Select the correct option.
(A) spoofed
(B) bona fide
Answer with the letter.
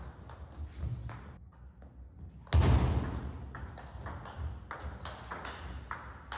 B